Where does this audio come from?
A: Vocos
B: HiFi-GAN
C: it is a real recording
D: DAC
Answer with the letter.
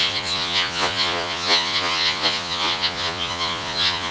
A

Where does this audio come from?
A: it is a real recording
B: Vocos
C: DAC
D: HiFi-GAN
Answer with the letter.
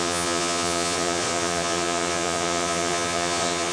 B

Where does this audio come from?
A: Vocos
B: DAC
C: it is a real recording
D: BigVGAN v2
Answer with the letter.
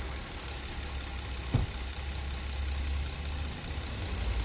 C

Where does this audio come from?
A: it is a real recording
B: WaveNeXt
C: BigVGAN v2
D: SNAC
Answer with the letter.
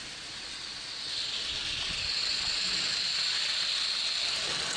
A